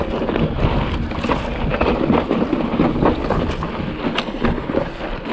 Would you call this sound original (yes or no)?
yes